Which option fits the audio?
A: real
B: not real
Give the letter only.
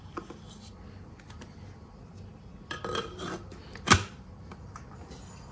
A